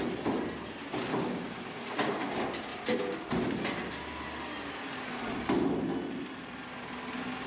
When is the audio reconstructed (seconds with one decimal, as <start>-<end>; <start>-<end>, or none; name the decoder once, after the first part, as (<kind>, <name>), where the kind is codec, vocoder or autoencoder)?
1.1-2.1 (codec, DAC)